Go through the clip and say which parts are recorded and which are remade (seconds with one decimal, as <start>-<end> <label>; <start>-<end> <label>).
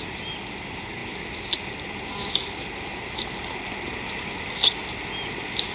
0.0-5.7 recorded